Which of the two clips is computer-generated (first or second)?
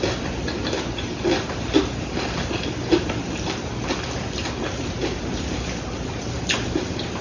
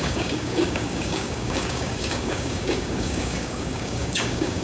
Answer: second